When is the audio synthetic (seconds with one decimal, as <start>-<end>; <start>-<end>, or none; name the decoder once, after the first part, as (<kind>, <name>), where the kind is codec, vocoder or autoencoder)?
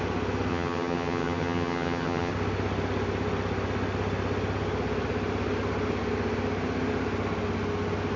0.5-2.3 (vocoder, HiFi-GAN)